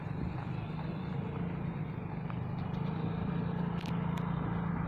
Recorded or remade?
recorded